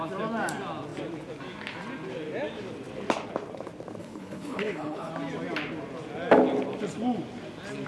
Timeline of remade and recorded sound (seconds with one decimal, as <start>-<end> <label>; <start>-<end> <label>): 0.0-4.0 recorded; 4.0-5.1 remade; 5.1-7.9 recorded